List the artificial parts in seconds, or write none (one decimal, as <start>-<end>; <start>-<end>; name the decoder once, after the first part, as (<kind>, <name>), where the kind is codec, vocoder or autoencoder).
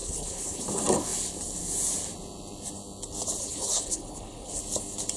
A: 0.0-0.6 (codec, HILCodec); 3.4-4.6